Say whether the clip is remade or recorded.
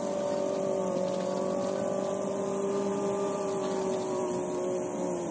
recorded